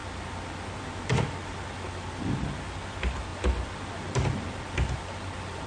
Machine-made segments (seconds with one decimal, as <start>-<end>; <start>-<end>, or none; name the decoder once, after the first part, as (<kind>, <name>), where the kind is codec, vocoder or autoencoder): none